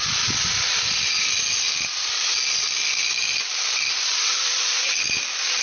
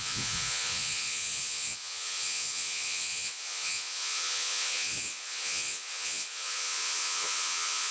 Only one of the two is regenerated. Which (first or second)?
second